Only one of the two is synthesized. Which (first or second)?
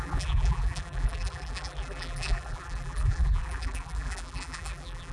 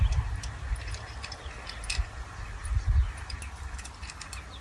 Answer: first